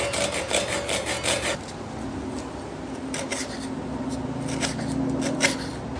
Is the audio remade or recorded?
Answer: recorded